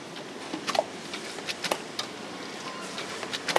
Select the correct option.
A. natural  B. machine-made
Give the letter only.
A